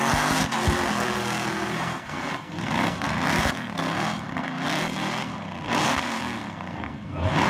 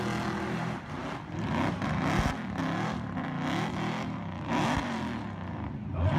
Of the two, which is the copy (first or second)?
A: first